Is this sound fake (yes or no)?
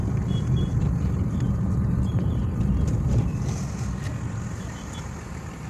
yes